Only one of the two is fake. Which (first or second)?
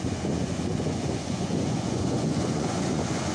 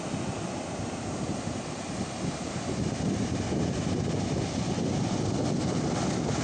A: first